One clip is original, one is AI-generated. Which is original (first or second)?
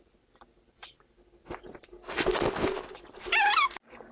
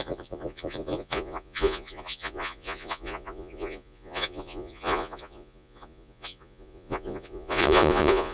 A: first